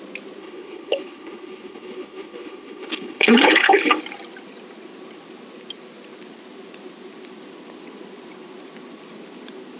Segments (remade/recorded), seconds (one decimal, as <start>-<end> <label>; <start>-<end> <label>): 0.0-0.4 recorded; 0.4-4.0 remade; 4.0-9.8 recorded